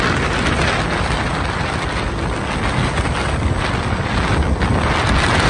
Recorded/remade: recorded